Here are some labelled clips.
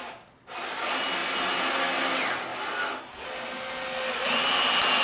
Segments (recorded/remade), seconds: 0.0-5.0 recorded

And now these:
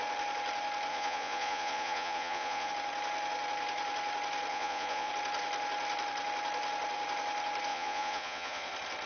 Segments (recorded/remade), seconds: 0.0-0.9 recorded; 0.9-2.7 remade; 2.7-4.5 recorded; 4.5-5.1 remade; 5.1-7.7 recorded; 7.7-8.7 remade; 8.7-9.1 recorded

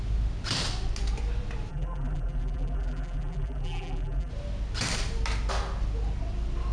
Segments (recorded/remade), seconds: 0.0-1.7 recorded; 1.7-4.3 remade; 4.3-6.7 recorded

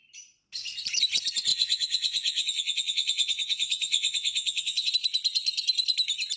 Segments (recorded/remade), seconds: 0.0-1.5 recorded; 1.5-4.9 remade; 4.9-6.4 recorded

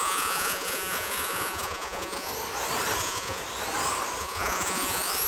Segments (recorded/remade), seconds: 0.0-2.3 remade; 2.3-3.0 recorded; 3.0-3.4 remade; 3.4-4.2 recorded; 4.2-5.3 remade

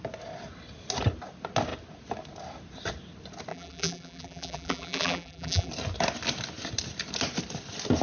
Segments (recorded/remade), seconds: 0.0-3.5 recorded; 3.5-5.7 remade; 5.7-8.0 recorded